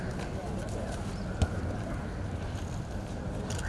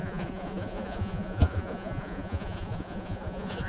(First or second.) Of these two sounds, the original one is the first